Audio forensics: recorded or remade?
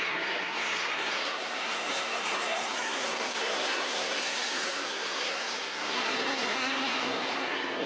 remade